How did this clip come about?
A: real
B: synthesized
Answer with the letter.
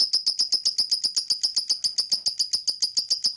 A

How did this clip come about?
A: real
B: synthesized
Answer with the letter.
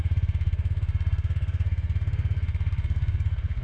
B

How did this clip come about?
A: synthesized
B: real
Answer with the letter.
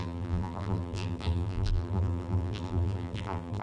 A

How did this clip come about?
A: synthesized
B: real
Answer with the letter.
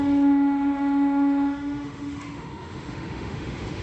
A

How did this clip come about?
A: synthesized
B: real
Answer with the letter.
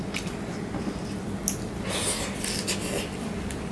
B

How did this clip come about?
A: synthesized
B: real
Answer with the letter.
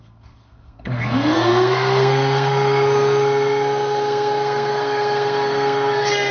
A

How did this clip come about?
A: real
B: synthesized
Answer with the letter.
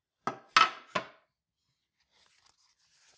A